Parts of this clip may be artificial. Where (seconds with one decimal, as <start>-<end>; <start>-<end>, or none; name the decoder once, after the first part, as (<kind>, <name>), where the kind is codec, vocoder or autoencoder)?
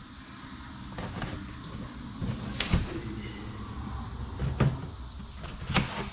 none